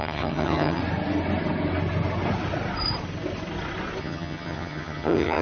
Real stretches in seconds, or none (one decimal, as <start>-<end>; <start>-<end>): 0.8-4.0